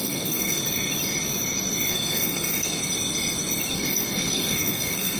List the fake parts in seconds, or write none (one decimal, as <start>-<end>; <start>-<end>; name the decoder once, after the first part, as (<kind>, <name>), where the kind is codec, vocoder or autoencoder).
0.0-0.6 (codec, SNAC); 1.9-2.8; 3.7-5.2